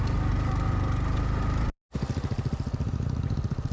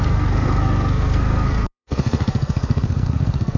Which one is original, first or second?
first